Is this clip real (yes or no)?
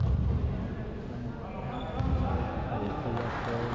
yes